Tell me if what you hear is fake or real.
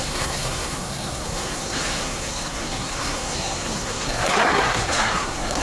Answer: fake